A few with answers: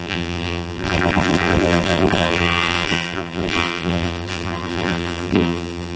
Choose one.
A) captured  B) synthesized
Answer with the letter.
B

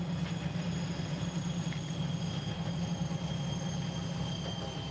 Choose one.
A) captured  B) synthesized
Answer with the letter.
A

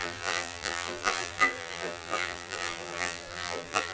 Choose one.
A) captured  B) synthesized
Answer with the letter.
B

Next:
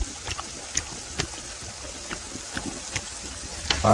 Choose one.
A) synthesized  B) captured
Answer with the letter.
B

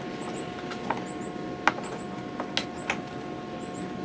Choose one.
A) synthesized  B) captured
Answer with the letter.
B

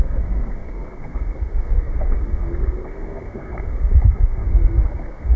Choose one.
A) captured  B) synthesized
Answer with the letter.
B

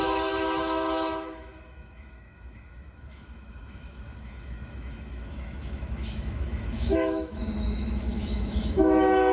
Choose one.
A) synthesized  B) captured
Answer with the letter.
A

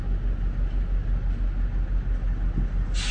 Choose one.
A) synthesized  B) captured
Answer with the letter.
B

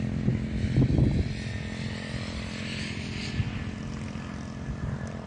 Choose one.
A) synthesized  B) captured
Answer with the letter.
B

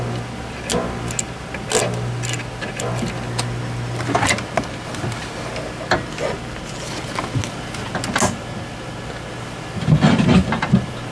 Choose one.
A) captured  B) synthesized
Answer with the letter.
A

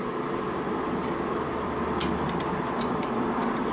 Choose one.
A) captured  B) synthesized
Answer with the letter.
A